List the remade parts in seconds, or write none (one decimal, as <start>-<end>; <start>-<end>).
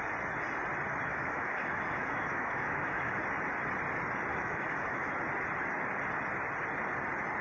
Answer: 1.1-3.2; 4.3-5.1